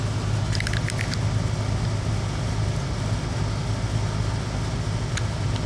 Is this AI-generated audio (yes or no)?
no